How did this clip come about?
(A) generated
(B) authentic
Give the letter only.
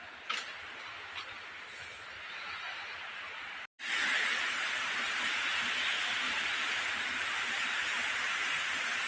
B